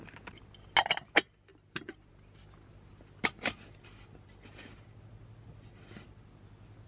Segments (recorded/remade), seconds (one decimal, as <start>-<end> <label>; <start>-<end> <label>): 0.0-6.9 recorded